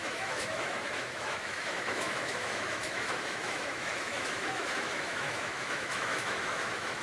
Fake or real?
fake